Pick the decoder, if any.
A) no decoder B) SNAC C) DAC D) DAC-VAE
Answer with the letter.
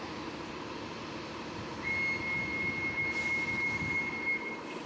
A